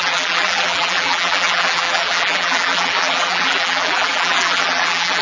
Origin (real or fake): fake